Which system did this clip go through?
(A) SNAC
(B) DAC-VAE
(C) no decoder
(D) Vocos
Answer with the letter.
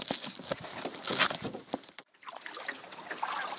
C